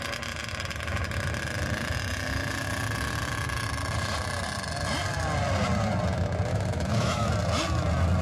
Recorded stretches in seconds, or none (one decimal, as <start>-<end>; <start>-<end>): 0.0-6.5; 7.3-8.2